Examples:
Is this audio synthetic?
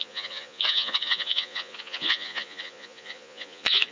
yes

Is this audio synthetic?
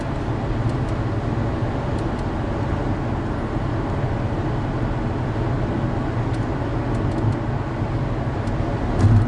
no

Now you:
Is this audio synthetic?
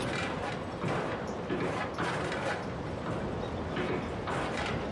no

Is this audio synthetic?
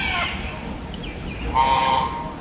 no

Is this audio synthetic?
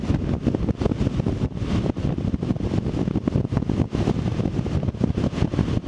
no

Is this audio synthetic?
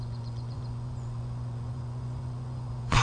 yes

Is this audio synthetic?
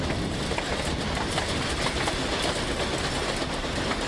no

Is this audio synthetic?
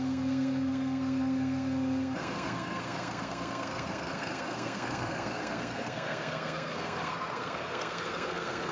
yes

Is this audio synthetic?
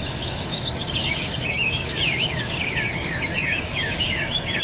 yes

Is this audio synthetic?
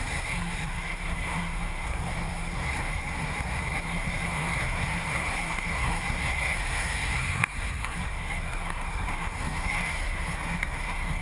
yes